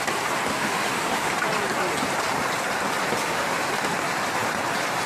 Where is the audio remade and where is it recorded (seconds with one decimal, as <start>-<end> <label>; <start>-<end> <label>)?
0.0-0.5 recorded; 0.5-1.3 remade; 1.3-3.2 recorded; 3.2-3.7 remade; 3.7-5.1 recorded